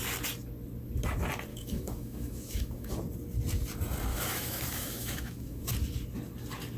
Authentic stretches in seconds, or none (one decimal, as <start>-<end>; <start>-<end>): 0.0-1.5; 3.0-4.1; 5.7-6.8